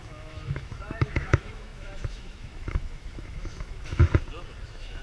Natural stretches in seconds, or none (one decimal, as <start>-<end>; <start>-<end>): 4.0-4.6